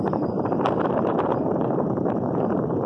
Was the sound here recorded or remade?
remade